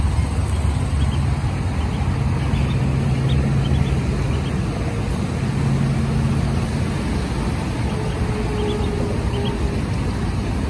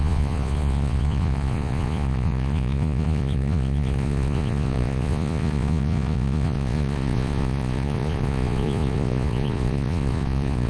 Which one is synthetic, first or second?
second